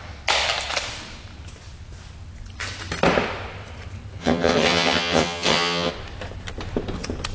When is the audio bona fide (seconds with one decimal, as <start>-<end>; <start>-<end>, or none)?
0.0-4.2; 5.9-7.3